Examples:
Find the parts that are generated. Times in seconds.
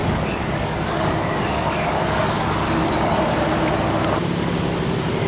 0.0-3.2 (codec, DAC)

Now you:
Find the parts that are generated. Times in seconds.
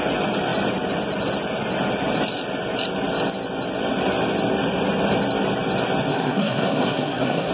6.1-7.5 (codec, SNAC)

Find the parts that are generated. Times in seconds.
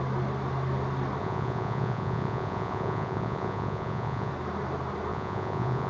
1.2-4.3 (vocoder, Vocos); 5.1-5.9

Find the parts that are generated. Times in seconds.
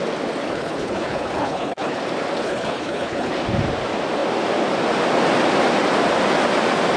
0.5-2.0 (codec, HILCodec); 2.4-3.3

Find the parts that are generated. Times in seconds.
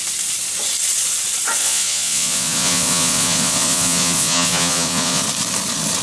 1.6-5.2 (vocoder, Vocos)